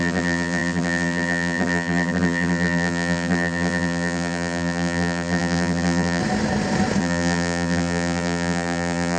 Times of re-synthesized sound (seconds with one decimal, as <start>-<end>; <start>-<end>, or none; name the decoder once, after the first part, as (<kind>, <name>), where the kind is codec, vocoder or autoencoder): 0.0-6.2 (vocoder, BigVGAN v2); 7.0-9.2